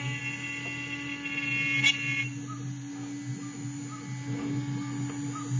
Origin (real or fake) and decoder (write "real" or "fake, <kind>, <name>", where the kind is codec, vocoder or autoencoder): real